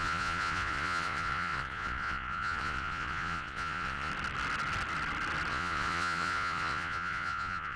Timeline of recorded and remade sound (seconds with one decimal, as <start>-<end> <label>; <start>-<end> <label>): 0.0-4.1 remade; 4.1-5.5 recorded; 5.5-7.8 remade